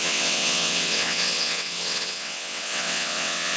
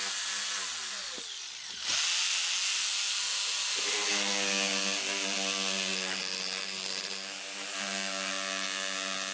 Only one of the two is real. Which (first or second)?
second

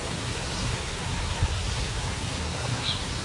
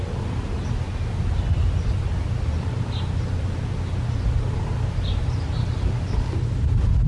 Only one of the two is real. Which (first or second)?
second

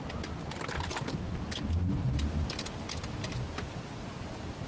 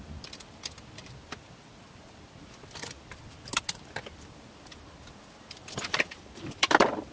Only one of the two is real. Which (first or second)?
first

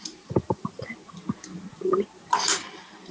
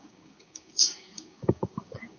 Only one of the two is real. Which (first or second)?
first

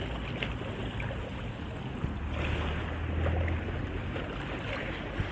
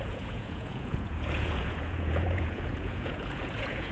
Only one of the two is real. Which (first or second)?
first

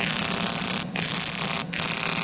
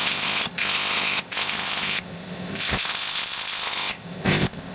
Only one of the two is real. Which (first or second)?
first